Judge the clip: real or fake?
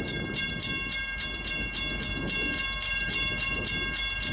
real